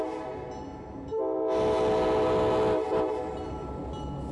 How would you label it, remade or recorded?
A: recorded